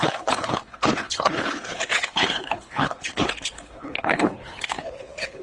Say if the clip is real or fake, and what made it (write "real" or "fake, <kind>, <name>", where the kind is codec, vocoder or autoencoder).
fake, codec, HILCodec